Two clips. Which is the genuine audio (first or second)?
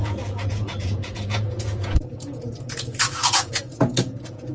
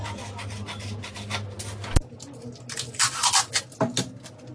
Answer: second